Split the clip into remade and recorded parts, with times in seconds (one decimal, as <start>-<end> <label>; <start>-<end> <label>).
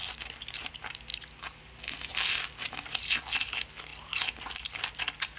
0.0-5.4 recorded